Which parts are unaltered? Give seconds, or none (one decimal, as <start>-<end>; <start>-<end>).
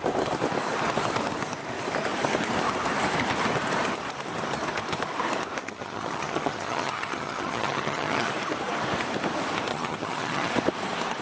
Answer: 0.0-5.6; 8.3-9.7; 10.5-11.2